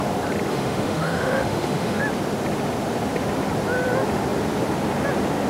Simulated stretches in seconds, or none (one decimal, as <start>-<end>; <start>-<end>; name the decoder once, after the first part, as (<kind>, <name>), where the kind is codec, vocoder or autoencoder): 0.5-2.0 (autoencoder, DAC-VAE)